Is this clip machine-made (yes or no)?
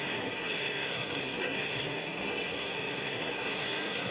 yes